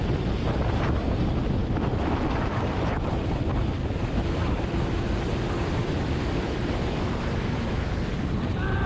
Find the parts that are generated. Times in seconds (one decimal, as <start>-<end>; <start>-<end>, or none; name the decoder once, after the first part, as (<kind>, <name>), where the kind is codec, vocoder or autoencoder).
1.6-2.6 (autoencoder, DAC-VAE); 3.8-5.1; 5.8-7.9